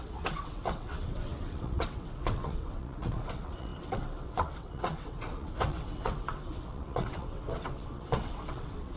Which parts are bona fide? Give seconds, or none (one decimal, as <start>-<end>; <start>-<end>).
none